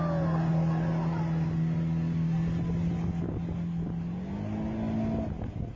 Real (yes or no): yes